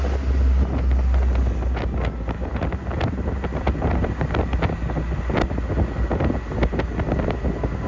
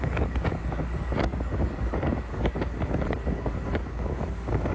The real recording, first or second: first